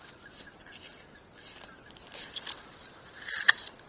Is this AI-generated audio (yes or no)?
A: no